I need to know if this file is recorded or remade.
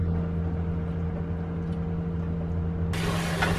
recorded